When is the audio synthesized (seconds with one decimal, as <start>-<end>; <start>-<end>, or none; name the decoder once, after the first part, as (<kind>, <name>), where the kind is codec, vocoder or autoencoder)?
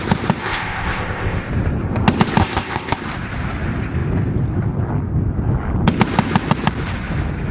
0.4-1.5 (codec, ZipCodec); 2.4-3.0